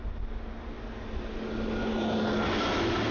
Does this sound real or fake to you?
real